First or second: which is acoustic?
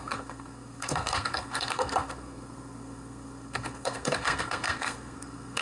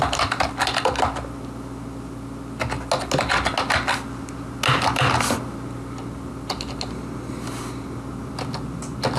second